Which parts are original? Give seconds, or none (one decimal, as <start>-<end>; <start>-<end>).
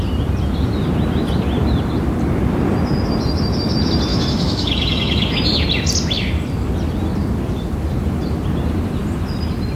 0.0-4.1; 5.4-9.8